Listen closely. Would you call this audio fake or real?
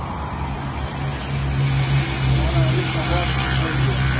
real